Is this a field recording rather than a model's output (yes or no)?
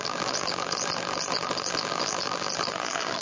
no